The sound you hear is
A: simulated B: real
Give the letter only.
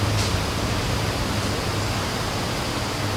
B